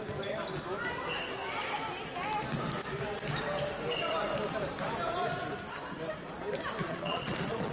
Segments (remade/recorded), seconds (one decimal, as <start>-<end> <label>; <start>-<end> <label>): 0.0-6.8 recorded; 6.8-7.7 remade